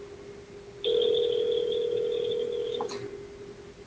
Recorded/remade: recorded